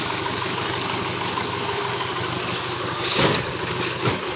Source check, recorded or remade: remade